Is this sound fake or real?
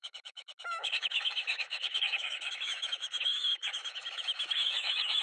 fake